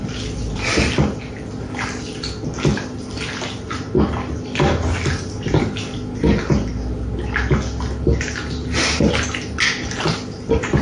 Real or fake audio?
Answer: real